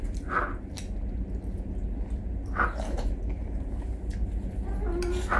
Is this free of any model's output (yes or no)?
yes